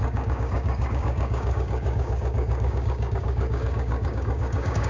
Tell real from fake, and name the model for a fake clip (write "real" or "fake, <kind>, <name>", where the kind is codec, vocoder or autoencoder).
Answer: fake, codec, DAC